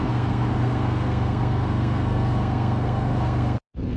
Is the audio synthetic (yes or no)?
yes